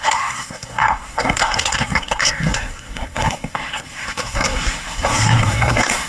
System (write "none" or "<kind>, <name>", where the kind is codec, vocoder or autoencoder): codec, SNAC